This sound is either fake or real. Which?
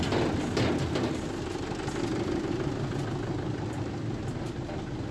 real